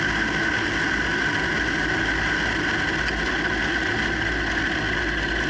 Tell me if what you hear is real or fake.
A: real